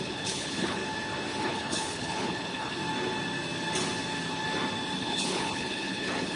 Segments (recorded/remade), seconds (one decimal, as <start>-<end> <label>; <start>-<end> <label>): 0.0-0.8 remade; 0.8-1.4 recorded; 1.4-2.8 remade; 2.8-5.0 recorded; 5.0-6.4 remade